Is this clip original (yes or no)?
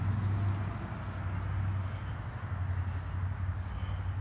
yes